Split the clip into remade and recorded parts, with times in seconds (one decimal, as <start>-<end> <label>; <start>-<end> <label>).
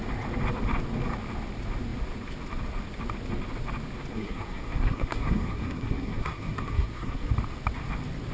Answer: 0.0-4.1 recorded; 4.1-7.3 remade; 7.3-8.3 recorded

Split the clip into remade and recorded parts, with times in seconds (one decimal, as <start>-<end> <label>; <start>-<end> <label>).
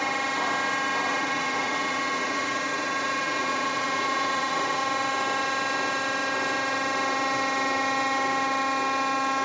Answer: 0.0-1.1 recorded; 1.1-4.8 remade; 4.8-9.4 recorded